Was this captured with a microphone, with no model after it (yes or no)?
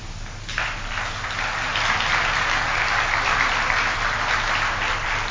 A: yes